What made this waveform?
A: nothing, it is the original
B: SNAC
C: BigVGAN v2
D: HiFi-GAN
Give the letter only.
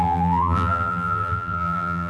C